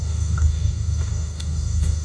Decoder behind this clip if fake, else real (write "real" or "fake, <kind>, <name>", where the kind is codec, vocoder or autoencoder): fake, codec, DAC